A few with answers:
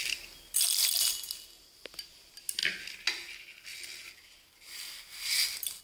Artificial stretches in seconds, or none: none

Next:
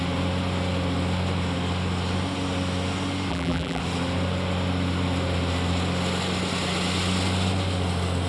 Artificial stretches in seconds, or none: 3.3-3.8 (vocoder, BigVGAN v2)